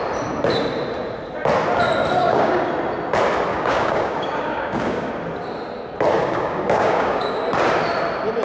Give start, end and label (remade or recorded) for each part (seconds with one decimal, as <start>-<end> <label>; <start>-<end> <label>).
0.0-2.2 recorded; 2.2-2.7 remade; 2.7-3.5 recorded; 3.5-5.1 remade; 5.1-6.2 recorded; 6.2-7.4 remade; 7.4-8.4 recorded

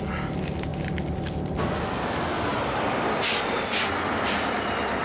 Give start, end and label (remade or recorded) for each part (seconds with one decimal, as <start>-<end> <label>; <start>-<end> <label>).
0.0-5.0 recorded

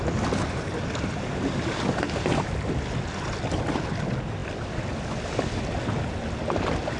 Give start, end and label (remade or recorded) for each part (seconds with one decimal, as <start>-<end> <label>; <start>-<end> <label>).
0.0-7.0 recorded

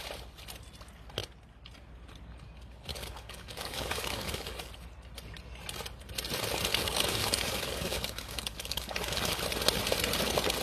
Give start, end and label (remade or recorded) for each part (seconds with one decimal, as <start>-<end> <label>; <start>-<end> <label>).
0.0-2.9 recorded; 2.9-4.7 remade; 4.7-6.7 recorded; 6.7-9.4 remade; 9.4-10.6 recorded

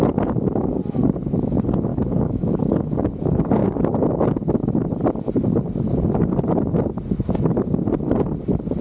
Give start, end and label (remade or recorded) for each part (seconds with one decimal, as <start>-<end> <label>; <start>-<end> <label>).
0.0-1.9 recorded; 1.9-3.1 remade; 3.1-8.8 recorded

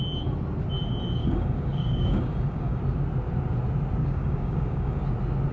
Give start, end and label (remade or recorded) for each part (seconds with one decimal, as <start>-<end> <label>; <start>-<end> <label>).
0.0-1.2 recorded; 1.2-2.8 remade; 2.8-4.0 recorded; 4.0-5.0 remade; 5.0-5.5 recorded

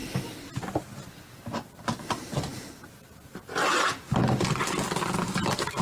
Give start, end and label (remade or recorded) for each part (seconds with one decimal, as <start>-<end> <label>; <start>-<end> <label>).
0.0-5.8 recorded

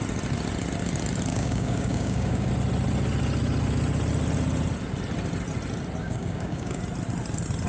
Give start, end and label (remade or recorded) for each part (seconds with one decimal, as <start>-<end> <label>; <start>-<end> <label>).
0.0-1.3 recorded; 1.3-2.5 remade; 2.5-6.0 recorded; 6.0-6.8 remade; 6.8-7.7 recorded